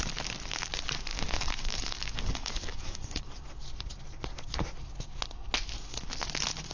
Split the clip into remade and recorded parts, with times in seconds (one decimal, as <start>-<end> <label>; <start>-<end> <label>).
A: 0.0-1.1 recorded; 1.1-3.2 remade; 3.2-6.7 recorded